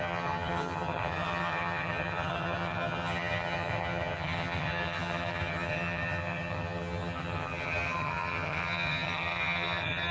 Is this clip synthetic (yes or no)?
yes